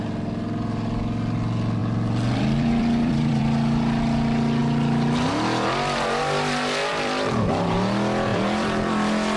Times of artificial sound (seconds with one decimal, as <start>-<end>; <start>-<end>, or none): 1.8-3.4; 6.9-7.5; 8.3-8.9